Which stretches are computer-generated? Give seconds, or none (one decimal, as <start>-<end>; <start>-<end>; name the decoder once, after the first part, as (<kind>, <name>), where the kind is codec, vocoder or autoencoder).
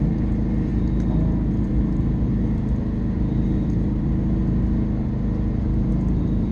0.0-0.7 (vocoder, BigVGAN v2); 1.5-4.4; 5.9-6.5